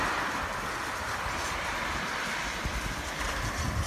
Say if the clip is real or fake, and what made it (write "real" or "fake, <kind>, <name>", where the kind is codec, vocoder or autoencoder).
real